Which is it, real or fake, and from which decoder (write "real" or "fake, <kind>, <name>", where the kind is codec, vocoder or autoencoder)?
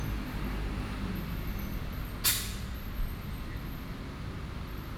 real